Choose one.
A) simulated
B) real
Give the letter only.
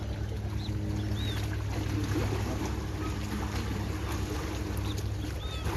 B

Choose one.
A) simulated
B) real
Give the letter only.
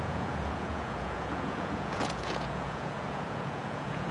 A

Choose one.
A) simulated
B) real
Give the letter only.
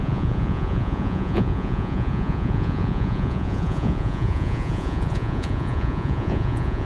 A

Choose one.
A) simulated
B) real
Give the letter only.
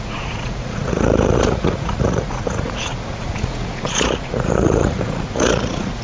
A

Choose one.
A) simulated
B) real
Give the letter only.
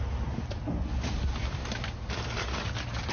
B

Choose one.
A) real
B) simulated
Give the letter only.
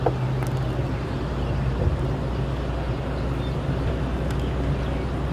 A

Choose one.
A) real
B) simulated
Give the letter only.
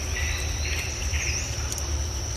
A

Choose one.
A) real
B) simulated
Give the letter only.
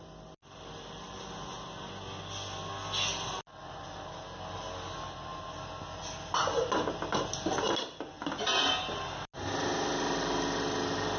A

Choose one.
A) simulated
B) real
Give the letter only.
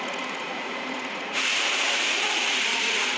A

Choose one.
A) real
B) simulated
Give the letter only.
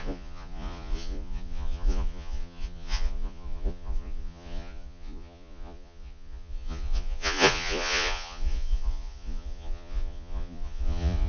B